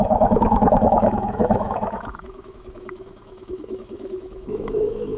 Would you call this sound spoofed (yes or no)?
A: yes